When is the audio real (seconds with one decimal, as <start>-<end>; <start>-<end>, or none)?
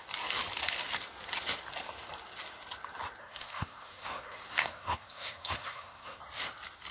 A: 0.0-3.2; 6.2-6.9